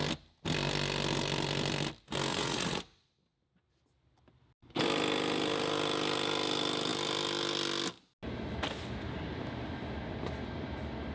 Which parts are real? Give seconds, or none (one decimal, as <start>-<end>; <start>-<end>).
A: 0.0-2.3; 2.8-11.1